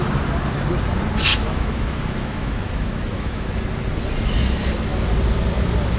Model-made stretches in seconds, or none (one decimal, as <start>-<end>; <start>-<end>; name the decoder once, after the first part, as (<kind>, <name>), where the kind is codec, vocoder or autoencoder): 1.3-3.5 (autoencoder, DAC-VAE)